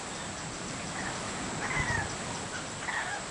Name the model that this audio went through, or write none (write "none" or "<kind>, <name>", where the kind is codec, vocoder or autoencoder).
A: none